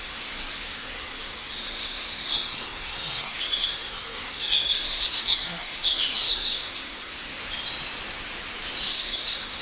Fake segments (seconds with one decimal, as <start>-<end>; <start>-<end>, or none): 0.0-7.4; 8.9-9.6